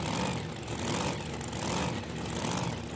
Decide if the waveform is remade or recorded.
recorded